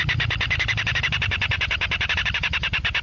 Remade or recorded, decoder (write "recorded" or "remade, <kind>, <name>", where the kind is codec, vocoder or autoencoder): recorded